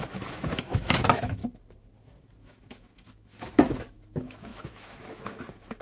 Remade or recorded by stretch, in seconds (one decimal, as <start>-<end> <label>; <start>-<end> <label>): 0.0-1.4 remade; 1.4-2.4 recorded; 2.4-5.8 remade